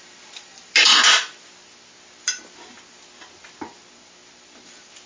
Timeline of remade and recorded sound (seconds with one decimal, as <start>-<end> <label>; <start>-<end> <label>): 0.0-5.1 recorded